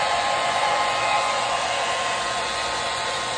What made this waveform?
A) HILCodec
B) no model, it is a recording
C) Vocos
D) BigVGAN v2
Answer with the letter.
C